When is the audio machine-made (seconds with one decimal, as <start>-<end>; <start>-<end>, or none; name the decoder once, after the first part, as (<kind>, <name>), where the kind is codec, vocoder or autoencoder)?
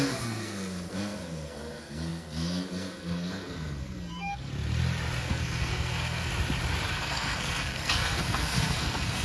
0.0-4.5 (codec, SNAC); 5.2-6.3; 6.9-9.2